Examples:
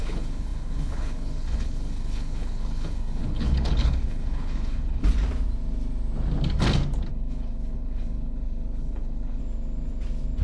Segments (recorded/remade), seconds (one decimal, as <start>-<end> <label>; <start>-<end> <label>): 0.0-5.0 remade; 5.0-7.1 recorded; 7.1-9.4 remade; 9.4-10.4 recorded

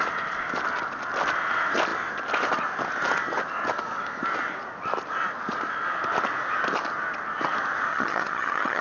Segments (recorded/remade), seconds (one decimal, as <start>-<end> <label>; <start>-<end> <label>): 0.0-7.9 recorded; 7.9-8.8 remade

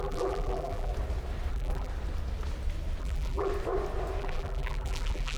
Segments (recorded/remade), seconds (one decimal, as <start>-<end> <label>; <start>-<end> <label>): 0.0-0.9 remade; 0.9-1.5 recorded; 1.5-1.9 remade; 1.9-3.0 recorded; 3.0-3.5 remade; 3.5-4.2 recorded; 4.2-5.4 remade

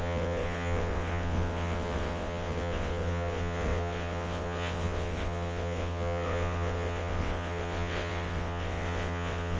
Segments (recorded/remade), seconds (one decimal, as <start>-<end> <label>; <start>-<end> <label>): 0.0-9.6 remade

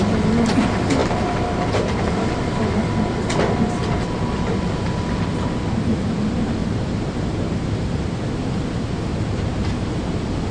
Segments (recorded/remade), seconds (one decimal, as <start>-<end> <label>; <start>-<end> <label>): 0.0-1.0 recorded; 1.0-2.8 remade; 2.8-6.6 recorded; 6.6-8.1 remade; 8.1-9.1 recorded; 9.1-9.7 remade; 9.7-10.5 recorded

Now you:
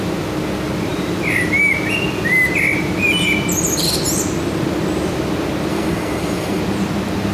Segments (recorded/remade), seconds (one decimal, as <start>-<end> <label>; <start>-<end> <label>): 0.0-5.7 recorded; 5.7-6.6 remade; 6.6-7.3 recorded

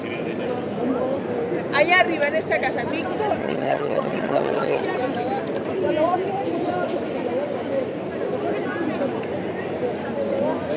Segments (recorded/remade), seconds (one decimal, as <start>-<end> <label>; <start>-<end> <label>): 0.0-3.4 recorded; 3.4-4.8 remade; 4.8-10.8 recorded